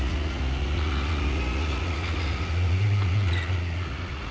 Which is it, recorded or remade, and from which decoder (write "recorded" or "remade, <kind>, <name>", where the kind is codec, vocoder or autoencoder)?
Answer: remade, vocoder, Vocos